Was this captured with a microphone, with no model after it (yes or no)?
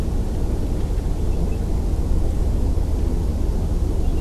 yes